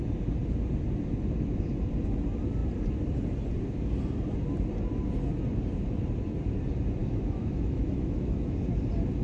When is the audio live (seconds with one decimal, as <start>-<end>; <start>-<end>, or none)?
0.0-7.0; 8.4-9.2